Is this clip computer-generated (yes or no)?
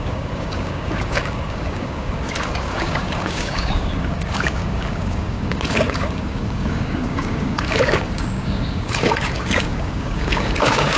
yes